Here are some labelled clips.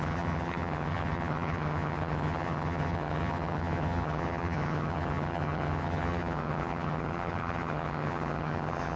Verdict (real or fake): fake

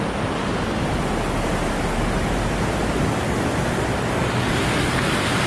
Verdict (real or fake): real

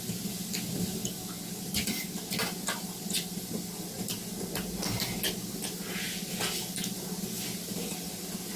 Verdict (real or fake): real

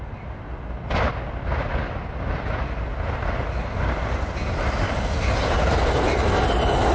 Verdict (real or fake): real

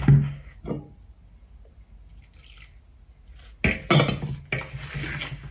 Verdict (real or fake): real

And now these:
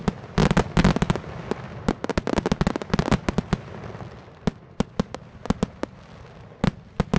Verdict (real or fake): real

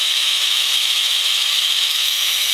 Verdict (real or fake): fake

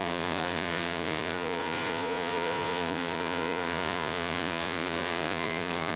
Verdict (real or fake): fake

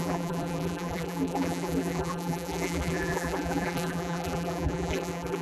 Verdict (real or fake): fake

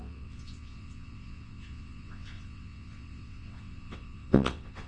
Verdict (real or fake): fake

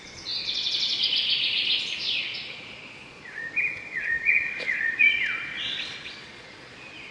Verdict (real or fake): fake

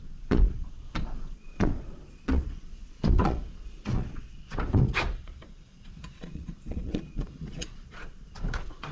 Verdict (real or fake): fake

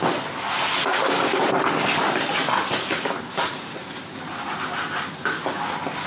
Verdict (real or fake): real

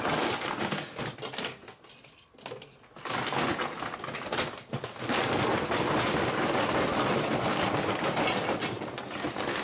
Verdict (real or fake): real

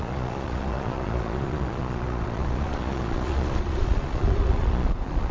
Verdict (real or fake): fake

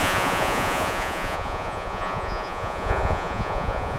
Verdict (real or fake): fake